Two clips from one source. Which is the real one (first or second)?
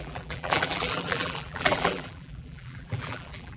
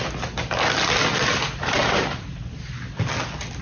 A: second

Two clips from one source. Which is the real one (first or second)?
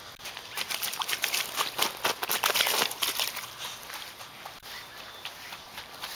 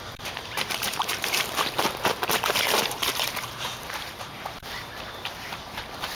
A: first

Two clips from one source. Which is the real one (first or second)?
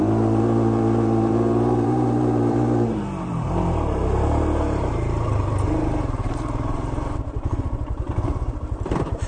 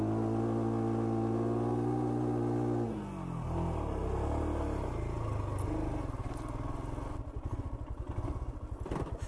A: second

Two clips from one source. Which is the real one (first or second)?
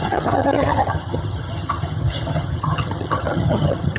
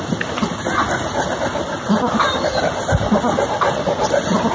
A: second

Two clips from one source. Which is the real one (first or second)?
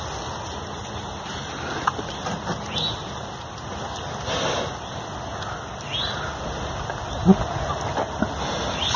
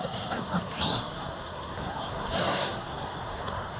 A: first